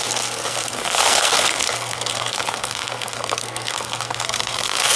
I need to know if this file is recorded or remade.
remade